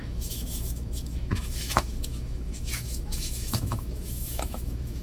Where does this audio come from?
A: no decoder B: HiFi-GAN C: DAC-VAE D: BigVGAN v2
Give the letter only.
C